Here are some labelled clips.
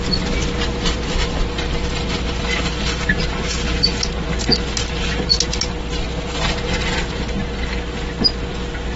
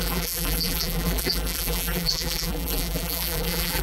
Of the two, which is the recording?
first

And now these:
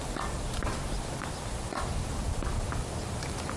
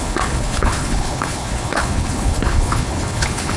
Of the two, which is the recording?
first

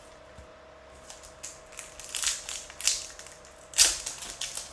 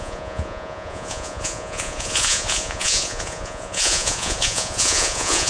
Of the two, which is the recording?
first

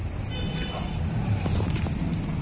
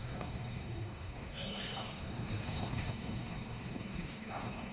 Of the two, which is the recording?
first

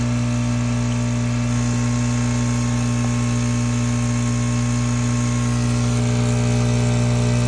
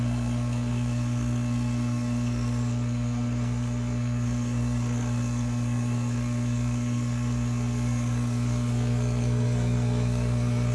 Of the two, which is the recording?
first